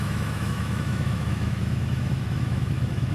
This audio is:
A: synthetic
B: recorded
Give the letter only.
A